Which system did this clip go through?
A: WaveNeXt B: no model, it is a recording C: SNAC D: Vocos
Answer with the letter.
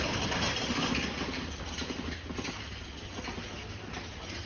B